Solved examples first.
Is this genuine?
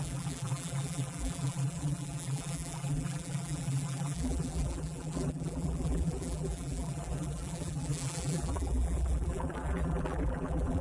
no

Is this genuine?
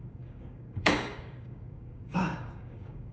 no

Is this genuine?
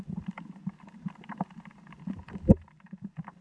yes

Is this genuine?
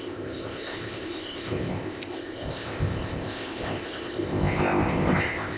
no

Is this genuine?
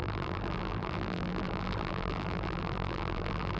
no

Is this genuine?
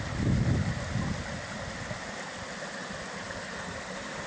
yes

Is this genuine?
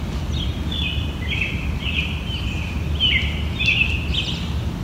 yes